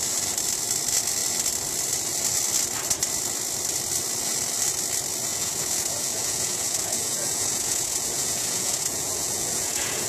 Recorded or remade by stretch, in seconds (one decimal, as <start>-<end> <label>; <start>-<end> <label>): 0.0-5.3 recorded; 5.3-10.1 remade